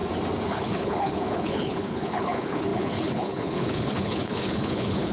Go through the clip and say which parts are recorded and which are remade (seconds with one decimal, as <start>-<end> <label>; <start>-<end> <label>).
0.0-0.5 recorded; 0.5-5.1 remade